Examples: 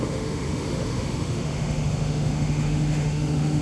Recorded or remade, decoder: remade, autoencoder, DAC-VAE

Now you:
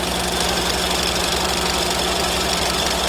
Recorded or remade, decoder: recorded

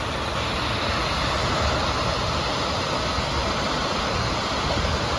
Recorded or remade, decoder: recorded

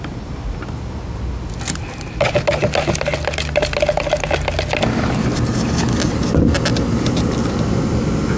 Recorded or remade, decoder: recorded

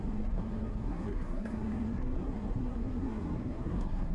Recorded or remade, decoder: remade, codec, SNAC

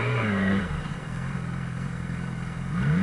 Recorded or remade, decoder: remade, codec, SNAC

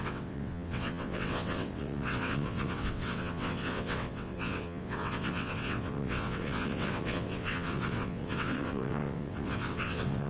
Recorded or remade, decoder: remade, vocoder, WaveNeXt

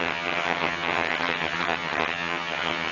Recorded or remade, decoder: remade, vocoder, HiFi-GAN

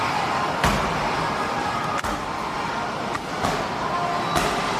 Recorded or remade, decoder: recorded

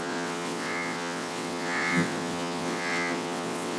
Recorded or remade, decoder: remade, vocoder, WaveNeXt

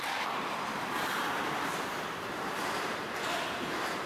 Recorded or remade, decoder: recorded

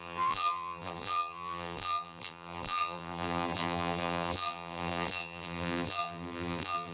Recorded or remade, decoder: remade, vocoder, BigVGAN v2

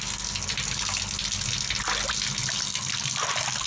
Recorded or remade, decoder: recorded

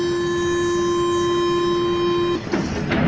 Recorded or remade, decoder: recorded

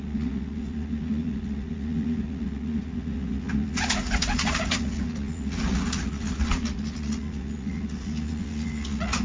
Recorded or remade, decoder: remade, vocoder, Vocos